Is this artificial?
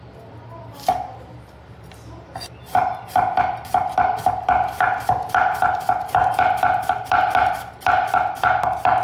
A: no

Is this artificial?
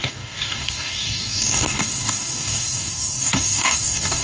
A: yes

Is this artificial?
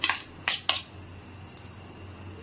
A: no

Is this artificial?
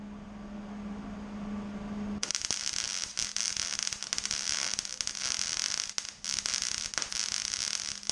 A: no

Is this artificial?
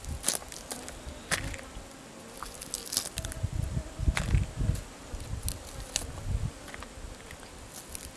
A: no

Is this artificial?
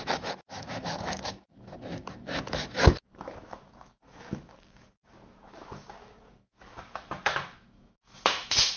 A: yes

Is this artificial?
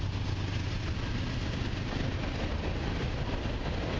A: no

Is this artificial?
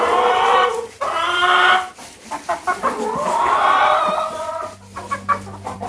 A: yes